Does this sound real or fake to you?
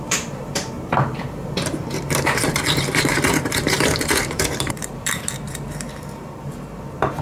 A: fake